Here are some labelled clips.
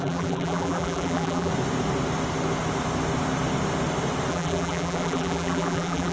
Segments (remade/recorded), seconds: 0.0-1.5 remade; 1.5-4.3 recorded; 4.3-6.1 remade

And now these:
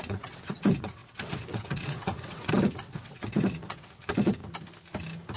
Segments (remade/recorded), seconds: 0.0-4.4 remade; 4.4-5.4 recorded